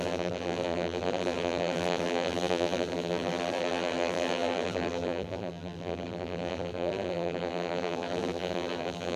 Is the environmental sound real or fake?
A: fake